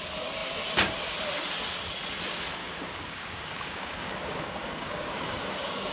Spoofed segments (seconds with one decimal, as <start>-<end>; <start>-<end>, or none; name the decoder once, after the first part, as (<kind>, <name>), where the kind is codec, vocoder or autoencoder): 2.6-5.9 (codec, DAC)